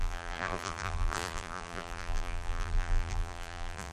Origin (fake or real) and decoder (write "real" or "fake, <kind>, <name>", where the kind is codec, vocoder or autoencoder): fake, vocoder, BigVGAN v2